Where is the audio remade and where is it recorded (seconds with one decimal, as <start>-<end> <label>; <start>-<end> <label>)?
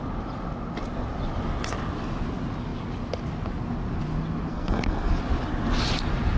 0.0-4.5 recorded; 4.5-5.1 remade; 5.1-6.4 recorded